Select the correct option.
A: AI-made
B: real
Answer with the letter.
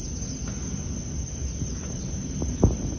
B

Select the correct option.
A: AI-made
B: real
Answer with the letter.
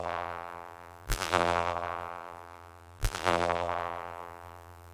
A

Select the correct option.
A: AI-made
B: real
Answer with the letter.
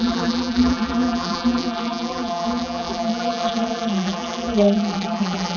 A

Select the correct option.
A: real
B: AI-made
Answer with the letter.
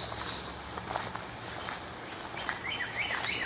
A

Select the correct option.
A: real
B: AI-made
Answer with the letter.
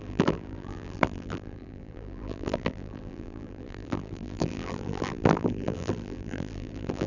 B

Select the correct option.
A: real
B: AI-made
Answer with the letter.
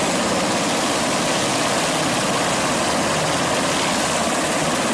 A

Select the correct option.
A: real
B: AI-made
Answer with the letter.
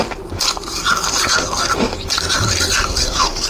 A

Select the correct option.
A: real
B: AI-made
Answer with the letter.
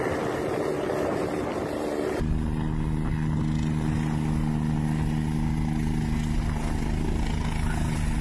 A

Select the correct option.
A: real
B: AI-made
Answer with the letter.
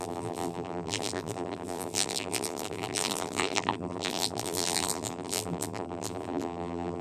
B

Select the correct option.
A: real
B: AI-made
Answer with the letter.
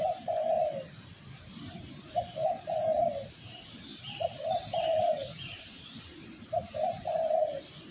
B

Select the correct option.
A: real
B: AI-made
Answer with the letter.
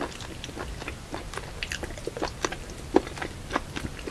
B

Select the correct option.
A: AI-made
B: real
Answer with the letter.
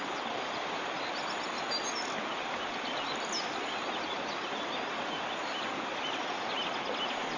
B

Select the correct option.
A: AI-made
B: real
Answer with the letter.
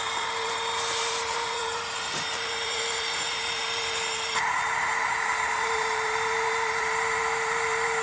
A